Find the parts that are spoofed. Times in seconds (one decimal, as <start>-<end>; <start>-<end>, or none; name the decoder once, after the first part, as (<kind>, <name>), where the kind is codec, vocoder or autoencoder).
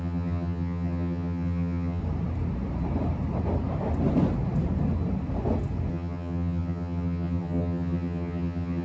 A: 0.0-2.0 (vocoder, HiFi-GAN); 5.9-8.8